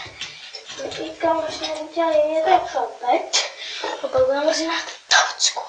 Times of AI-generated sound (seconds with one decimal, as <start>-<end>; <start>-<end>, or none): 1.3-1.9